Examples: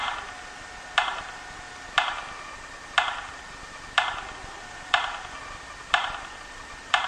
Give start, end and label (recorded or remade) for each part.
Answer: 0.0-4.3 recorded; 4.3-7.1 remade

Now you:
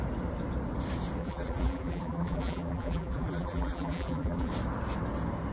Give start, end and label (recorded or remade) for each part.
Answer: 0.0-1.2 recorded; 1.2-4.5 remade; 4.5-5.5 recorded

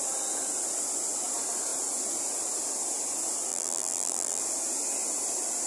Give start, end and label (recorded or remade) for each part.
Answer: 0.0-3.5 recorded; 3.5-4.4 remade; 4.4-5.7 recorded